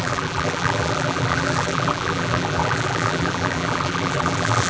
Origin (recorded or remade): remade